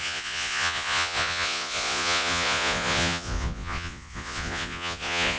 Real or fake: fake